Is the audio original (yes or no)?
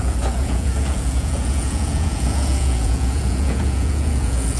no